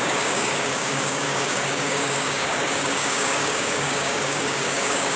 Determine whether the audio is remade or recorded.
remade